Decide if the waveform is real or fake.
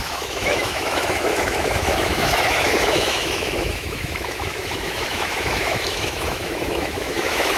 fake